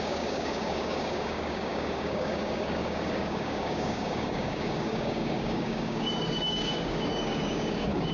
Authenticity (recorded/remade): remade